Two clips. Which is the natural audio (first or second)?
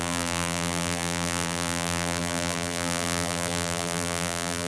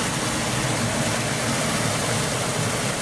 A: second